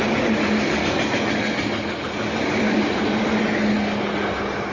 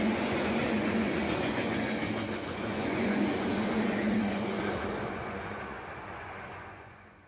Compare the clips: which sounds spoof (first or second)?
second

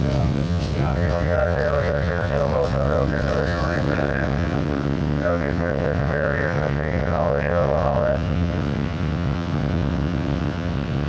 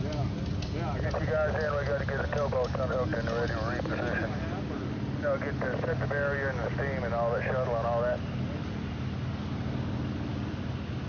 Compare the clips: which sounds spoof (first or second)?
first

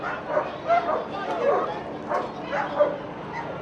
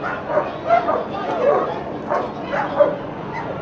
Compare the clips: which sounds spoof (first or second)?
second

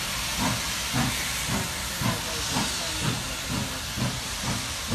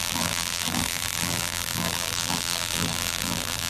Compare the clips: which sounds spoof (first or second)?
second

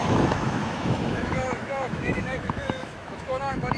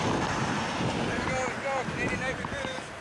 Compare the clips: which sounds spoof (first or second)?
first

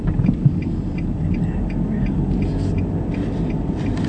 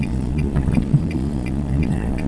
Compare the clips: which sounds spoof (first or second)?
second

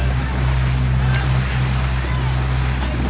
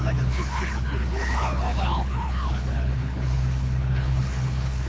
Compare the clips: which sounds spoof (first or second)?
second